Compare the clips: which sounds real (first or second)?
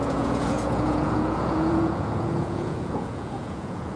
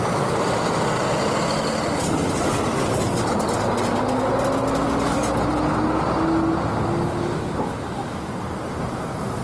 second